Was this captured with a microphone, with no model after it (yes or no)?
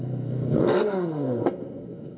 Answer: no